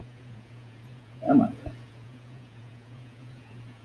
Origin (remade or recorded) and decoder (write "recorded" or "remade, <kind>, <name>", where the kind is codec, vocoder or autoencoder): remade, vocoder, Vocos